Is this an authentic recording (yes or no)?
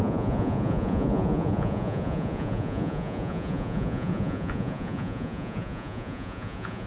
no